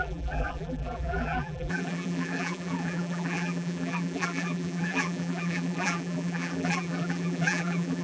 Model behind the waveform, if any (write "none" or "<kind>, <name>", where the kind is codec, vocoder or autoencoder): vocoder, BigVGAN v2